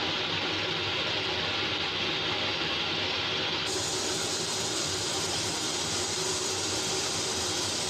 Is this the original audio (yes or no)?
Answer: yes